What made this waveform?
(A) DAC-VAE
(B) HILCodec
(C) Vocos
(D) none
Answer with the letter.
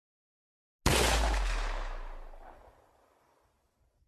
D